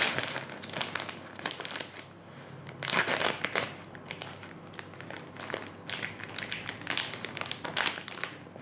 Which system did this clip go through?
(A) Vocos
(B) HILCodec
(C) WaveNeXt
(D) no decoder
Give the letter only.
D